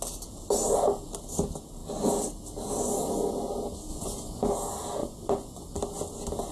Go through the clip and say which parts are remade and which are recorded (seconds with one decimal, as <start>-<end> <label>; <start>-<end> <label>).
0.0-3.9 recorded; 3.9-4.5 remade; 4.5-5.0 recorded; 5.0-5.7 remade; 5.7-6.5 recorded